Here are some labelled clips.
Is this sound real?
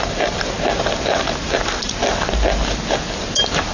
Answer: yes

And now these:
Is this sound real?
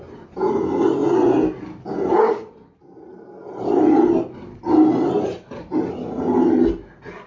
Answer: yes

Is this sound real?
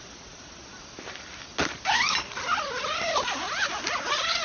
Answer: yes